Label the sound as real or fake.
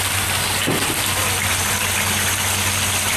real